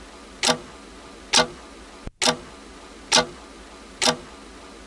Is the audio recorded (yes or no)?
yes